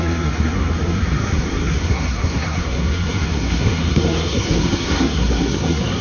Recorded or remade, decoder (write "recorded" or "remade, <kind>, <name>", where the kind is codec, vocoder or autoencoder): remade, codec, SNAC